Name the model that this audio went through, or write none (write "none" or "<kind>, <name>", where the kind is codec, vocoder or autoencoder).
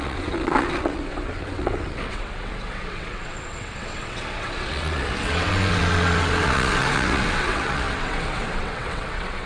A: vocoder, WaveNeXt